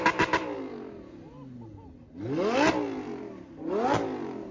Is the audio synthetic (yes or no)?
no